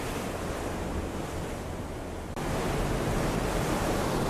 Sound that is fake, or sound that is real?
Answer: real